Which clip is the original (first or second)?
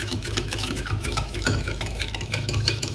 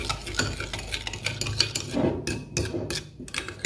second